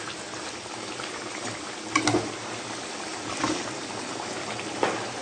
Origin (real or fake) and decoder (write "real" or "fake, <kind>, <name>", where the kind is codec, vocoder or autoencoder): real